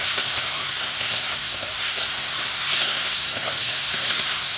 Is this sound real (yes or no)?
no